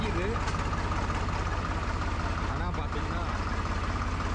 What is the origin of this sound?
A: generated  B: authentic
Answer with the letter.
B